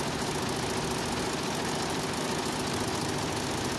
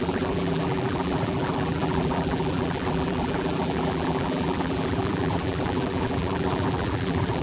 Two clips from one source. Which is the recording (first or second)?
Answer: first